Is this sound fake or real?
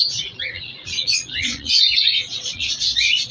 fake